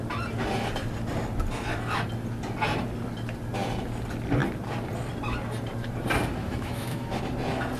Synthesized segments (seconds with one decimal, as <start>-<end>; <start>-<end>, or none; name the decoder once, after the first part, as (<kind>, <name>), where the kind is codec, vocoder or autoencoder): 6.4-7.2 (autoencoder, DAC-VAE)